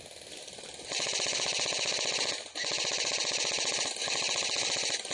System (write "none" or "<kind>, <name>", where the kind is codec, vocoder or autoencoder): none